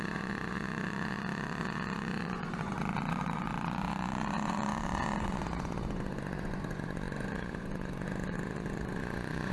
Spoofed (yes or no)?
yes